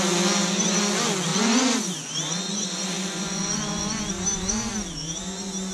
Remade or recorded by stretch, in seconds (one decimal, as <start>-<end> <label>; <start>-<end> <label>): 0.0-1.3 recorded; 1.3-4.0 remade; 4.0-5.7 recorded